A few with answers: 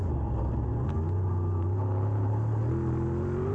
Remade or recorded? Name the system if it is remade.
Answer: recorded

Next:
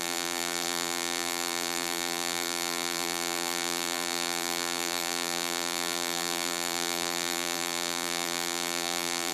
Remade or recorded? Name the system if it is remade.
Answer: remade, vocoder, BigVGAN v2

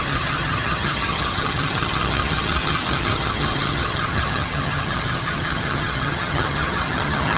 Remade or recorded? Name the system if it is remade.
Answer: remade, vocoder, HiFi-GAN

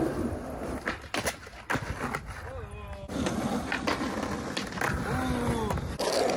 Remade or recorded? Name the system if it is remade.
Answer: recorded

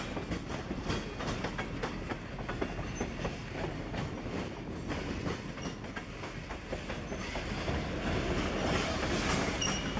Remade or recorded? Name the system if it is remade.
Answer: recorded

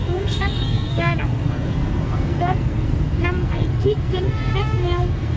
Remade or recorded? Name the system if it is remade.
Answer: remade, codec, SNAC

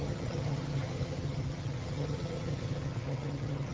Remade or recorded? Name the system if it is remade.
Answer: remade, vocoder, HiFi-GAN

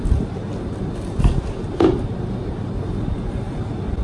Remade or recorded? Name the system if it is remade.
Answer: recorded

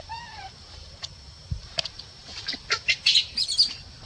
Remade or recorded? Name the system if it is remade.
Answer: remade, vocoder, BigVGAN v2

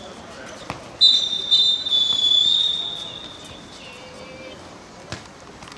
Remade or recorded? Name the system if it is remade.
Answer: recorded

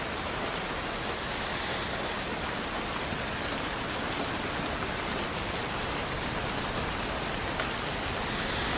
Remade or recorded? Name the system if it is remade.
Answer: recorded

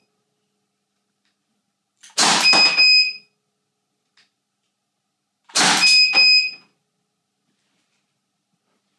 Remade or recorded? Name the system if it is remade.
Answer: recorded